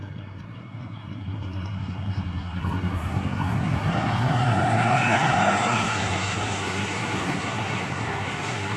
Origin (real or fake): fake